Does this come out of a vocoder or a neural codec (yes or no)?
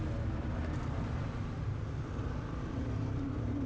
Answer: no